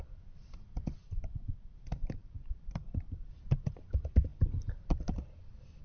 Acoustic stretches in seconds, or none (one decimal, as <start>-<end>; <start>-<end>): 0.0-1.0; 3.3-5.8